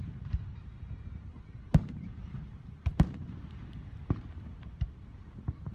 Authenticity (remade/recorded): remade